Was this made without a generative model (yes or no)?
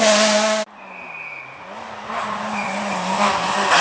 yes